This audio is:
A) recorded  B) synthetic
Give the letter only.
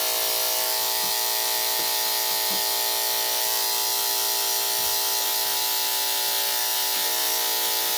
A